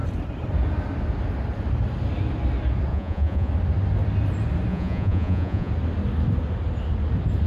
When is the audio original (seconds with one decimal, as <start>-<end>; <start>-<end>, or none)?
0.0-2.9; 3.5-4.7; 5.7-7.5